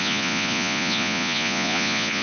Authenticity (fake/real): fake